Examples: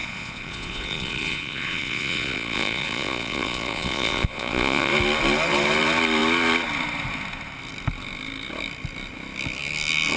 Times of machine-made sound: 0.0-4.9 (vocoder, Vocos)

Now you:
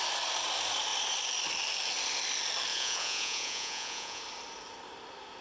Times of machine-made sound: 2.7-4.2 (vocoder, Vocos)

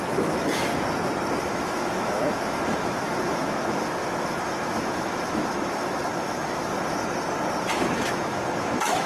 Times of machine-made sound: 0.0-0.7 (autoencoder, DAC-VAE); 1.4-6.7; 7.7-9.1